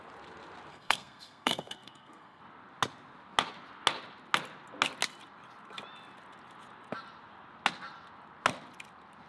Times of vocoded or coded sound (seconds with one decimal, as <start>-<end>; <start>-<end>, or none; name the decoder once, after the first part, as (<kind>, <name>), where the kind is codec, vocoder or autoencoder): 0.7-2.4 (codec, SNAC)